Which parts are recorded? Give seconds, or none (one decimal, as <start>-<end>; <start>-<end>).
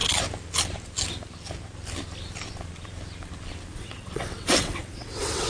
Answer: 0.0-3.7